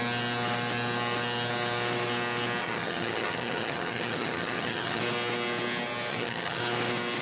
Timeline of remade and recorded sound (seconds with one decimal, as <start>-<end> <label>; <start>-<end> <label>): 0.0-2.6 recorded; 2.6-5.0 remade; 5.0-6.1 recorded; 6.1-6.6 remade; 6.6-7.2 recorded